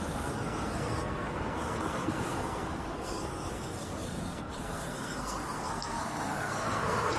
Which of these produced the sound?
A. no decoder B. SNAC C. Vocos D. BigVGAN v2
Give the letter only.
B